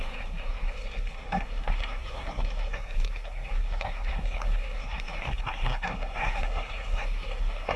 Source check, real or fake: fake